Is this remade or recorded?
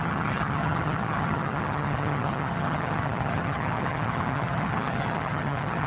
remade